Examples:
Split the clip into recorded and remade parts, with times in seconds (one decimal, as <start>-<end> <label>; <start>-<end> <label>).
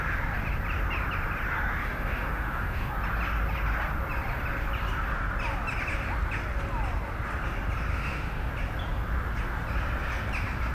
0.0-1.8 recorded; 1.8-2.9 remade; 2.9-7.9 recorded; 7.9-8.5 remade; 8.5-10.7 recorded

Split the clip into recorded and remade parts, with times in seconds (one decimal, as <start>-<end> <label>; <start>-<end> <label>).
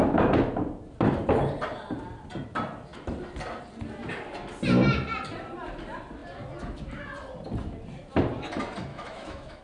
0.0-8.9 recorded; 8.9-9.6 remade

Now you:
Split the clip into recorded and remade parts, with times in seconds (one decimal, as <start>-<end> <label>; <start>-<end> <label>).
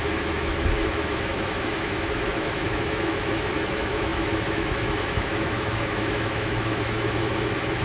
0.0-7.8 remade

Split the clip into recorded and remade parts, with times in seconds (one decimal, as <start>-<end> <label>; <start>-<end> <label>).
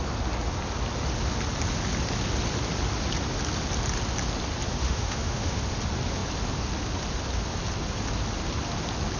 0.0-4.8 recorded; 4.8-5.6 remade; 5.6-9.2 recorded